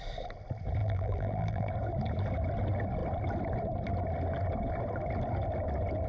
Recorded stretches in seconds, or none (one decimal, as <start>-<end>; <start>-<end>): 0.0-0.8; 1.7-6.1